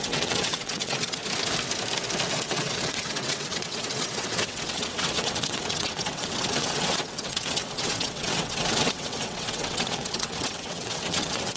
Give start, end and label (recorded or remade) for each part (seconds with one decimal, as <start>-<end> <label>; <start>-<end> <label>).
0.0-1.2 remade; 1.2-2.3 recorded; 2.3-11.6 remade